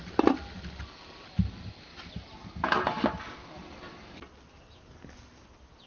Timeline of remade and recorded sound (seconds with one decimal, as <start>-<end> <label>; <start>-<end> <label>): 0.0-5.9 recorded